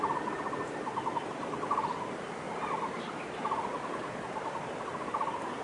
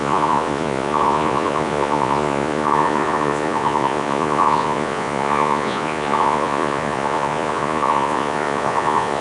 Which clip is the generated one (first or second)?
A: second